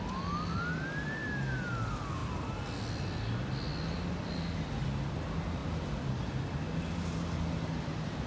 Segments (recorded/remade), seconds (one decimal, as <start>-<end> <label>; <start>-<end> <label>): 0.0-8.3 recorded